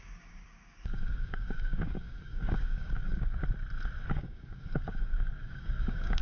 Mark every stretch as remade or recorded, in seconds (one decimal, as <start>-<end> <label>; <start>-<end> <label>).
0.0-3.4 remade; 3.4-4.1 recorded; 4.1-6.2 remade